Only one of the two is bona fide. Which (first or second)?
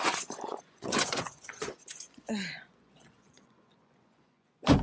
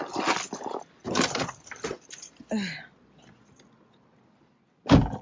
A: second